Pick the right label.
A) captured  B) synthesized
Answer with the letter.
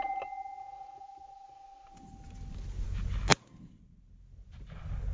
A